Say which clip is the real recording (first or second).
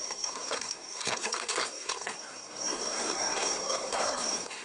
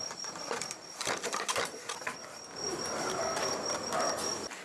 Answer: second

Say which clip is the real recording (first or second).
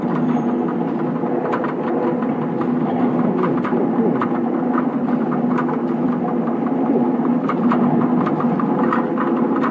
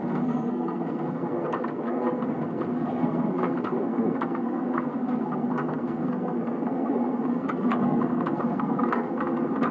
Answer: first